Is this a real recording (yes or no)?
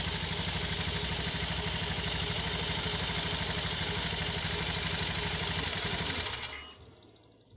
yes